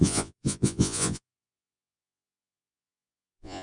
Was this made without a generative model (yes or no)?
no